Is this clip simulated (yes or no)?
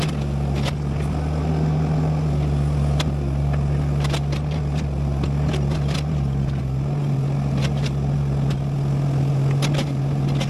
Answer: no